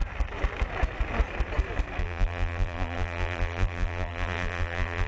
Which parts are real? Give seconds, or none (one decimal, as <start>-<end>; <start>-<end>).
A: 0.0-2.0